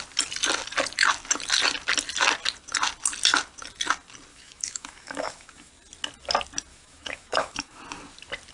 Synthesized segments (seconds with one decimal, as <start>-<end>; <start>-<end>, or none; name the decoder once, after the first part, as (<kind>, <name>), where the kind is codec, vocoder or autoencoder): 4.3-5.7 (autoencoder, DAC-VAE); 6.7-7.8